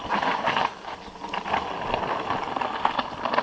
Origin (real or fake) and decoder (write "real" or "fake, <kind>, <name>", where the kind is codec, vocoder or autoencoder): real